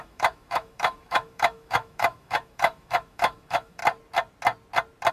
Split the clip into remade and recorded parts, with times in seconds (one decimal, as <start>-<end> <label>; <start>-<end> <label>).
0.0-3.8 remade; 3.8-5.1 recorded